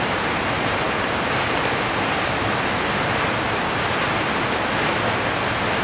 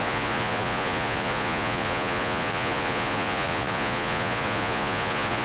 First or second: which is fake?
second